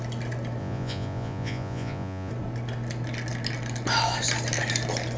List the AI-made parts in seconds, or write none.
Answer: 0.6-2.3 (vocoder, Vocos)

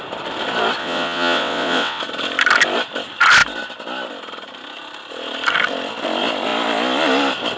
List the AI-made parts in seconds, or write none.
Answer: 0.8-2.0 (vocoder, WaveNeXt)